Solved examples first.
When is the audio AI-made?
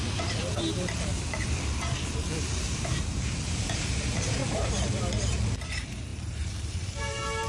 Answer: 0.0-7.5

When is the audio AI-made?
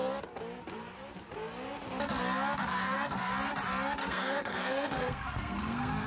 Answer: 2.7-3.3; 4.0-6.1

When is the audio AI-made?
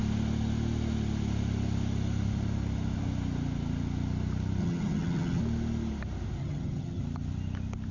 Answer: 4.6-5.4; 6.4-7.0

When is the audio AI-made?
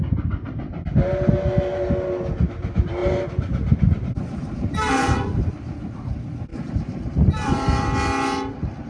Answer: 3.0-5.5; 6.5-7.5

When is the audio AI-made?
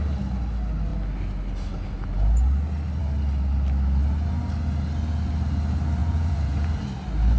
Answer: 6.0-6.8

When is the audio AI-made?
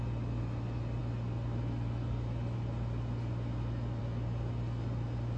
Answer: none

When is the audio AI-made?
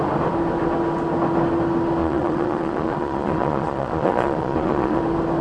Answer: 2.0-5.0